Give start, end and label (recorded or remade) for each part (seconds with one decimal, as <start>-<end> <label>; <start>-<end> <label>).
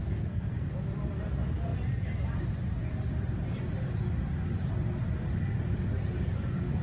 0.0-0.7 remade; 0.7-6.8 recorded